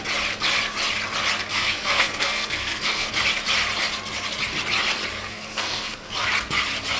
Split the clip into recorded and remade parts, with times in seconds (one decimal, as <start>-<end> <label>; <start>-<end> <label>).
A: 0.0-1.5 recorded; 1.5-3.1 remade; 3.1-5.3 recorded; 5.3-6.1 remade; 6.1-7.0 recorded